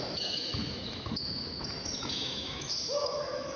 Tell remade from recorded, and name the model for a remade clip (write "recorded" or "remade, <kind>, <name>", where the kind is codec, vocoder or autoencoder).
remade, autoencoder, DAC-VAE